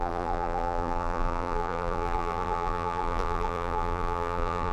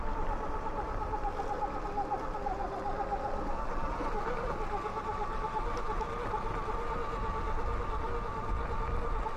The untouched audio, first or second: second